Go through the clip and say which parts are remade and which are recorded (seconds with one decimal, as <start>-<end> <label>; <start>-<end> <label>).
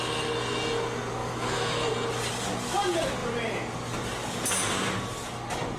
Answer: 0.0-1.2 recorded; 1.2-1.9 remade; 1.9-5.8 recorded